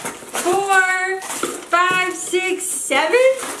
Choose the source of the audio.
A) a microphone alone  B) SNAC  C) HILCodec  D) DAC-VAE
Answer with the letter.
A